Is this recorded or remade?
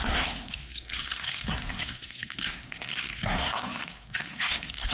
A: remade